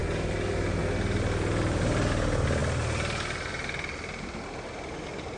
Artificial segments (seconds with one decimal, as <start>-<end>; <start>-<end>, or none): none